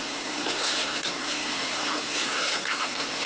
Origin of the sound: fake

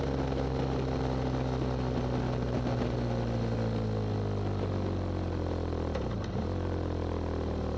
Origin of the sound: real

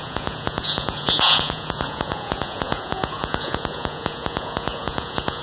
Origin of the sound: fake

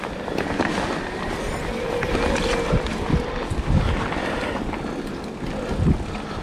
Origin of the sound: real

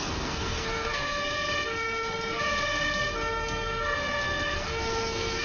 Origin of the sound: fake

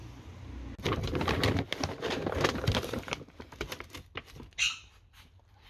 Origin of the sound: real